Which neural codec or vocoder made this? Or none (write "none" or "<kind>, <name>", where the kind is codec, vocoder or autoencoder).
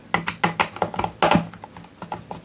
none